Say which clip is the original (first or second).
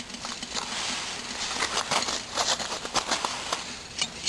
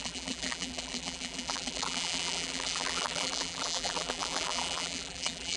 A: first